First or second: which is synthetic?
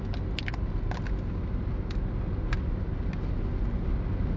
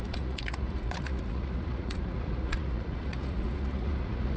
second